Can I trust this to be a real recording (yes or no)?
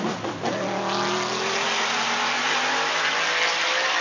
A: yes